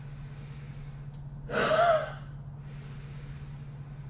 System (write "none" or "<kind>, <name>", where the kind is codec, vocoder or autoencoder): none